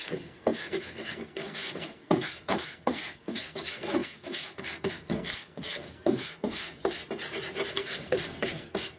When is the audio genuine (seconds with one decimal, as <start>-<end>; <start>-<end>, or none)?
7.0-7.7